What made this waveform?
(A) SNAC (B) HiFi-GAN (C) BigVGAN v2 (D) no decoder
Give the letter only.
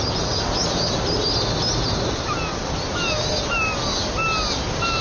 D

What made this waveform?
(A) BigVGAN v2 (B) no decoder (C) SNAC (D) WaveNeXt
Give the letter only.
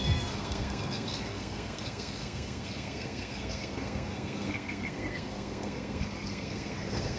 C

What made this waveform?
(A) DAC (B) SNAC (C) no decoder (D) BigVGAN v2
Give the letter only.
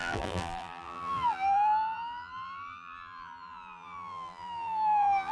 D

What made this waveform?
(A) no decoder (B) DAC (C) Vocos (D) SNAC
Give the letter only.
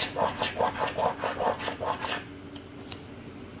A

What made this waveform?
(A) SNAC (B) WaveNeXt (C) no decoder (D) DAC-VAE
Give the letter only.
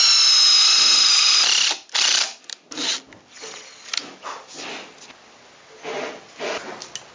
C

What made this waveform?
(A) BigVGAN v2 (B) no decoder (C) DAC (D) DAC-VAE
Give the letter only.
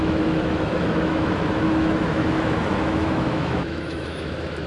D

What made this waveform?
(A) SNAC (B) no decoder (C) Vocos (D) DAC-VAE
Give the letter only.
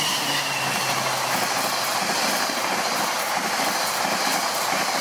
B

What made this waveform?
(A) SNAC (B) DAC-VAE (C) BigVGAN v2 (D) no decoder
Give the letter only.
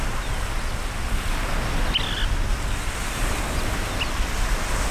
D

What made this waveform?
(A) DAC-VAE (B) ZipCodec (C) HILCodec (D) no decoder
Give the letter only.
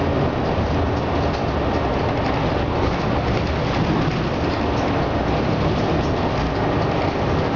D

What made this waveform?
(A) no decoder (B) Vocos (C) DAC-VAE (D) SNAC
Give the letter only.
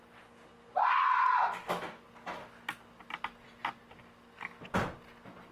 A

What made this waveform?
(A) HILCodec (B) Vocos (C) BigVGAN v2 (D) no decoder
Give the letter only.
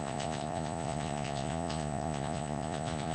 B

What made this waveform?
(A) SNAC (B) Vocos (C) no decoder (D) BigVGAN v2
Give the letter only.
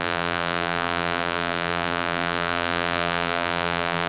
D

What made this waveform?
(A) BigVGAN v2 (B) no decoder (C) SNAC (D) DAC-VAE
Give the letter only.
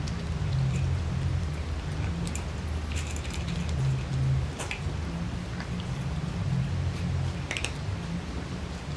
A